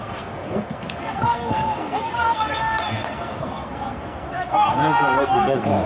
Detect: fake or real fake